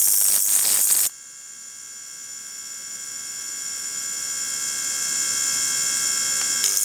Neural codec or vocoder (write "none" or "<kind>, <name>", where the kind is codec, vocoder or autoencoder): none